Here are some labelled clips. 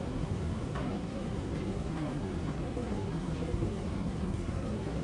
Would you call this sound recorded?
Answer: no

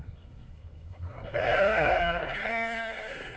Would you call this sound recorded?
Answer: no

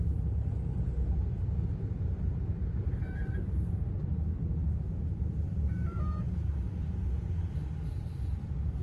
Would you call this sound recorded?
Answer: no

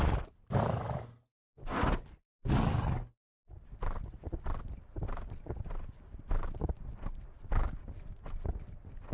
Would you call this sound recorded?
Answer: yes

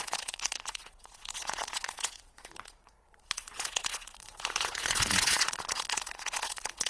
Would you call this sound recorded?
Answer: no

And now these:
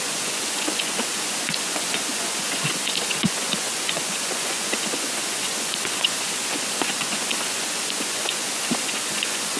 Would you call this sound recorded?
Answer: no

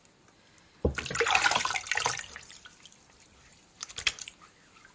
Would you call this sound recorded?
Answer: yes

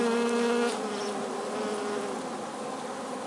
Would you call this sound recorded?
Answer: yes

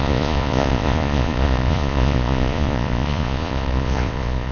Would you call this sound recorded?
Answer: no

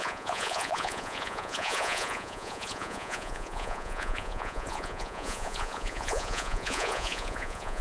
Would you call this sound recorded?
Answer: no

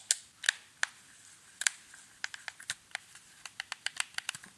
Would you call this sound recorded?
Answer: no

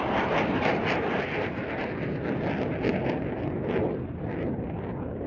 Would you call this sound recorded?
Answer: yes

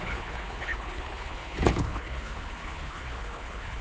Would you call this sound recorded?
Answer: no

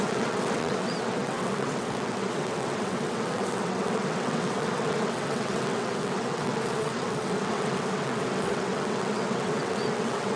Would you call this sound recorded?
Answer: no